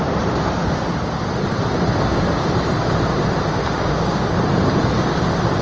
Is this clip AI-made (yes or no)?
no